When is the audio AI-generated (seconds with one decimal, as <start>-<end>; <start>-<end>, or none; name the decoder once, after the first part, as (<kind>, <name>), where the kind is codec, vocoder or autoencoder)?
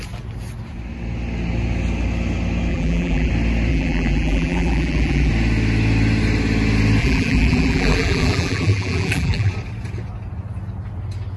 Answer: 2.7-3.3 (vocoder, BigVGAN v2); 3.7-5.3; 7.0-9.5